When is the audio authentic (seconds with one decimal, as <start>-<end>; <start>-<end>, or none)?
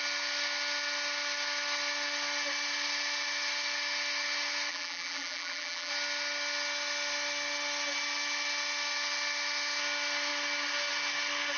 0.0-4.7; 5.9-11.6